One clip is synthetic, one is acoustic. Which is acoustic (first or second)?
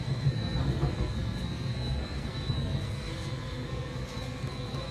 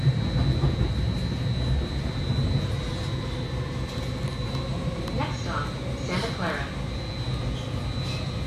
second